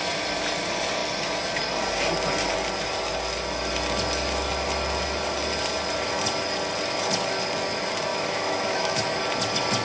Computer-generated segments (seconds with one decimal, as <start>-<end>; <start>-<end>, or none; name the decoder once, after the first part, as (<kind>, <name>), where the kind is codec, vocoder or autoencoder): 8.1-9.0 (autoencoder, DAC-VAE)